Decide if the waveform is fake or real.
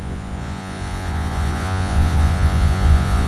fake